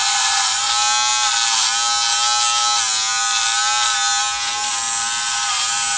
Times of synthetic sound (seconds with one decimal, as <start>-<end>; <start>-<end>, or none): 0.0-0.7